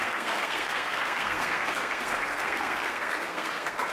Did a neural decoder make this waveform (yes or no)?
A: yes